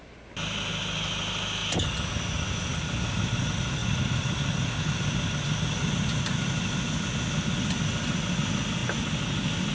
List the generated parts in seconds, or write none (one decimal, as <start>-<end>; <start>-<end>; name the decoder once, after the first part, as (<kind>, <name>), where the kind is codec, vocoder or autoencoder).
2.7-3.4 (vocoder, BigVGAN v2); 3.8-4.5; 8.8-9.7